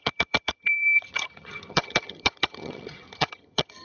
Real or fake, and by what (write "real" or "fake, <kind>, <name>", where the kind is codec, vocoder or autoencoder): fake, vocoder, HiFi-GAN